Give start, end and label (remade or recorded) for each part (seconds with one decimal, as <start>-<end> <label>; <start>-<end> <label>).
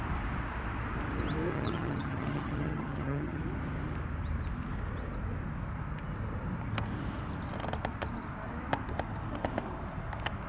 0.0-1.5 recorded; 1.5-3.4 remade; 3.4-10.5 recorded